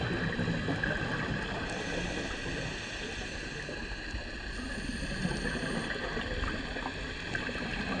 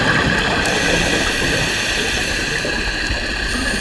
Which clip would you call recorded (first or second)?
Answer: first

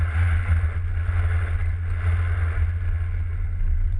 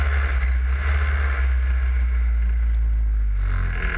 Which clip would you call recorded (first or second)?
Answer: second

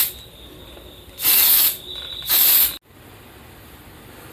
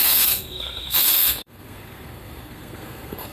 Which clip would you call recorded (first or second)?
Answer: first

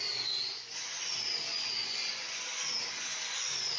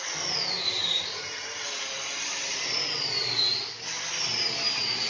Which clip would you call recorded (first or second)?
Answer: second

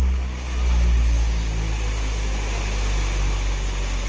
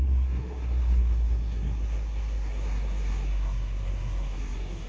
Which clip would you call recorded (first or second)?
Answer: first